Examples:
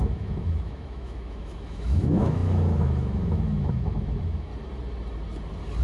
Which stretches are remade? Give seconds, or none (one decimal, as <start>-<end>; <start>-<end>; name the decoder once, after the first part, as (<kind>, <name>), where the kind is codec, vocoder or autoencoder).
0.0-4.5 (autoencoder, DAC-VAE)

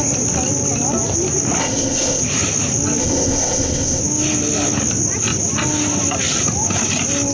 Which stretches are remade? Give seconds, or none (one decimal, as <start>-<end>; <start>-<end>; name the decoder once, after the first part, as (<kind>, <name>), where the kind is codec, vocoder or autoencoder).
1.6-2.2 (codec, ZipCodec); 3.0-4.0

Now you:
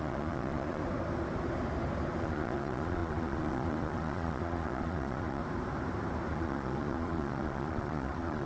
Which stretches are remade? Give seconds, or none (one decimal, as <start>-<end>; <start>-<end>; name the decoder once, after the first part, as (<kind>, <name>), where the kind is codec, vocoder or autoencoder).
0.0-0.8 (vocoder, Vocos); 2.2-5.4; 6.3-8.5